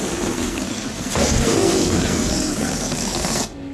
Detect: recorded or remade remade